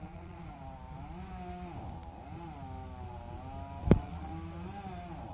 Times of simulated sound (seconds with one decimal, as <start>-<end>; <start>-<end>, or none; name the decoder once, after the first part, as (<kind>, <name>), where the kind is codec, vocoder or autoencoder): 0.0-0.6 (vocoder, Vocos); 3.8-4.3